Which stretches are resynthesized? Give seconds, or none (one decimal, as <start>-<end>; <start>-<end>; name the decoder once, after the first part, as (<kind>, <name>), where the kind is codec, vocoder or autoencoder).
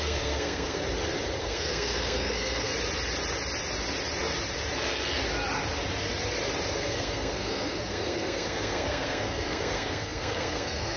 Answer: 0.0-0.8 (codec, SNAC); 1.4-2.7; 6.7-11.0